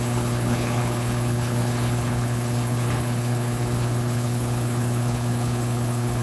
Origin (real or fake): fake